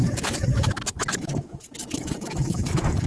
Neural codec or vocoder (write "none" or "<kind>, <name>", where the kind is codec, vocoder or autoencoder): autoencoder, DAC-VAE